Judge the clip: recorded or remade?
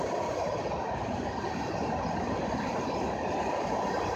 recorded